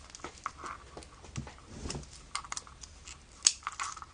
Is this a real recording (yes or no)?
yes